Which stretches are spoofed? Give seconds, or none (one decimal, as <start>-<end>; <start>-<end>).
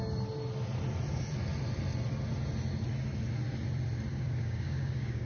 4.1-5.3